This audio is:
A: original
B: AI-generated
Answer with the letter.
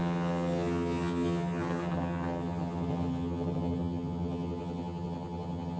B